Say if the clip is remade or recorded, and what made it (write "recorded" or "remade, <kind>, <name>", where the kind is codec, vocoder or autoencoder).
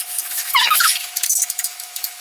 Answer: remade, autoencoder, DAC-VAE